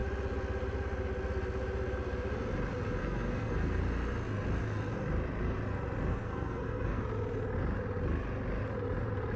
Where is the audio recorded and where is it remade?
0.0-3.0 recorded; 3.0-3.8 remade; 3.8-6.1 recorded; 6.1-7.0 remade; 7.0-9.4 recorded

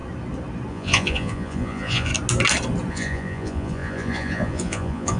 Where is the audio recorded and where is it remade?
0.0-0.7 recorded; 0.7-2.1 remade; 2.1-2.9 recorded; 2.9-5.2 remade

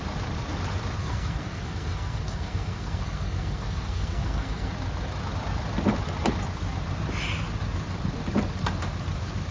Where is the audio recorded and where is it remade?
0.0-1.0 recorded; 1.0-4.7 remade; 4.7-9.5 recorded